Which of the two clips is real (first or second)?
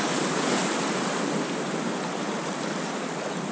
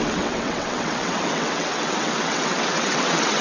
first